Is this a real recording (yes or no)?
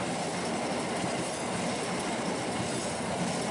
yes